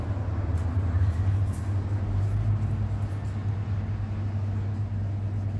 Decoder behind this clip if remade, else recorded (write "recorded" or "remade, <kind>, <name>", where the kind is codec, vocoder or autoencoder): recorded